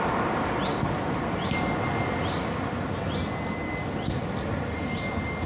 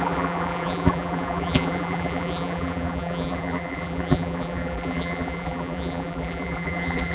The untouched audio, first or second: first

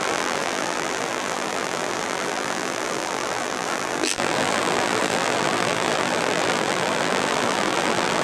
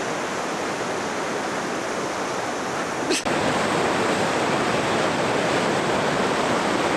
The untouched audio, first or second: second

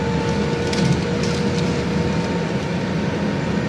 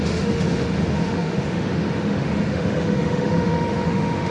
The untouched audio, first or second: first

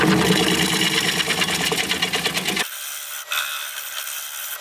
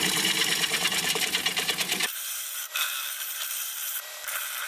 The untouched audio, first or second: first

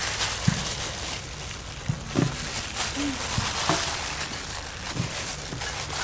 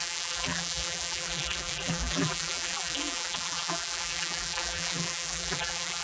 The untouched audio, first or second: first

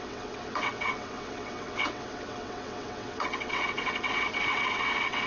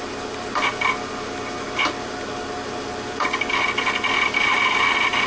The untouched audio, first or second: second